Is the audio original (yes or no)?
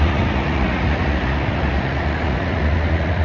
no